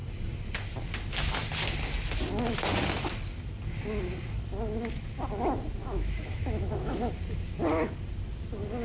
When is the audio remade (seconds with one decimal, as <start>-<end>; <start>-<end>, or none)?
5.8-7.1